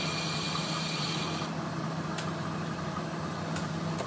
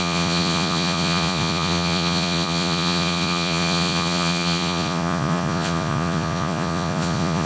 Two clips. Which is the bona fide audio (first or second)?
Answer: first